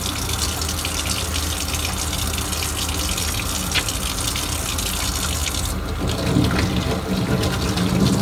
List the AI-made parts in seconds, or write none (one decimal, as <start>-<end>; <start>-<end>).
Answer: none